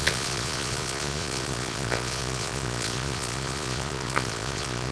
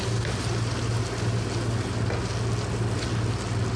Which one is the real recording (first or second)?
second